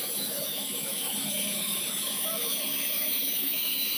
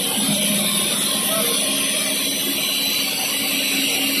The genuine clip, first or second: second